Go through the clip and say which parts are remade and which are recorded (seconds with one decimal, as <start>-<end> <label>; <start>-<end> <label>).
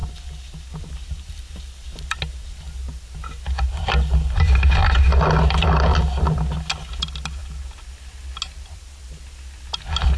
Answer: 0.0-10.2 recorded